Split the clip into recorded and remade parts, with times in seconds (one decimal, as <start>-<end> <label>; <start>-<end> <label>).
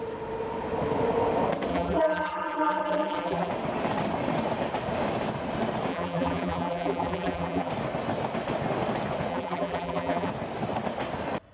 0.0-1.7 recorded; 1.7-3.5 remade; 3.5-5.9 recorded; 5.9-7.7 remade; 7.7-9.3 recorded; 9.3-10.3 remade; 10.3-11.5 recorded